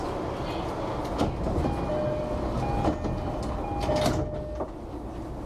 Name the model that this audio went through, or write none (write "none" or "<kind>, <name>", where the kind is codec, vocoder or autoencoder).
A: none